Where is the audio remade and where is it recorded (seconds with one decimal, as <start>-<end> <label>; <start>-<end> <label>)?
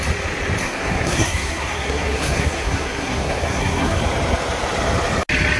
0.0-0.6 recorded; 0.6-4.0 remade; 4.0-5.6 recorded